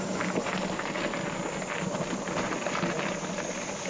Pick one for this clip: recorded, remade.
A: recorded